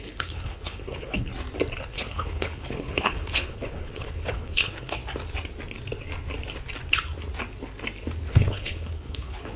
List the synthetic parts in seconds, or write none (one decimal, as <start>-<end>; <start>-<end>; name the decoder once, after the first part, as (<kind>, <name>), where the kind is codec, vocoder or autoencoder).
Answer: 0.0-1.3 (codec, HILCodec); 1.8-5.0; 8.3-9.6